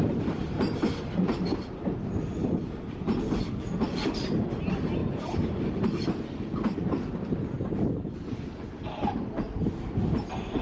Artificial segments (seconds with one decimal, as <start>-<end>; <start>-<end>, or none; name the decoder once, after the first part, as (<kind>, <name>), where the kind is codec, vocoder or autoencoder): 0.4-1.6 (vocoder, BigVGAN v2); 5.0-5.9